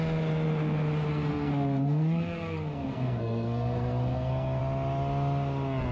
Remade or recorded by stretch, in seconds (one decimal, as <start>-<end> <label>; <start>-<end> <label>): 0.0-1.1 recorded; 1.1-4.6 remade; 4.6-5.9 recorded